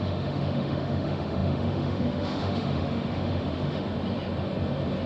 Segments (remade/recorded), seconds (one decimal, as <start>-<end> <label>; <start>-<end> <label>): 0.0-3.9 remade; 3.9-5.1 recorded